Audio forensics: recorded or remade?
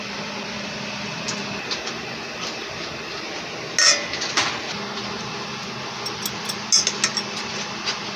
recorded